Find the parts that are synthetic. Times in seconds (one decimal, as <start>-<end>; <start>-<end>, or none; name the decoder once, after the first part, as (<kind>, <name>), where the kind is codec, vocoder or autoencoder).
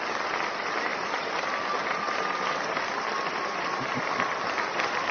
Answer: none